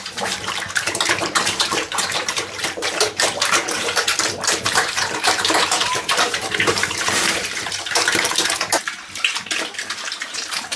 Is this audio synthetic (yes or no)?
yes